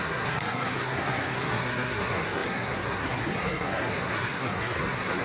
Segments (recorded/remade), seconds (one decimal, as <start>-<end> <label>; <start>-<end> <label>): 0.0-5.2 remade